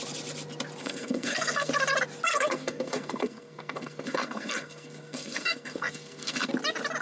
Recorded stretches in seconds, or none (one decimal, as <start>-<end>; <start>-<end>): 0.0-0.8; 1.7-2.3; 6.5-7.0